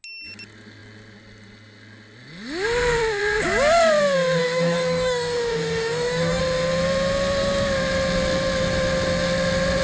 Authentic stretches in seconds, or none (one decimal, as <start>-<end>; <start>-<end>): 0.0-4.4; 6.4-9.8